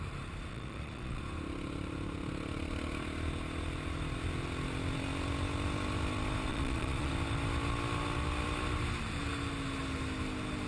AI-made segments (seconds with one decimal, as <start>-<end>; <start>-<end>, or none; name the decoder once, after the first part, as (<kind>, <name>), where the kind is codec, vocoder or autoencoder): 0.5-1.2 (vocoder, Vocos); 6.5-7.1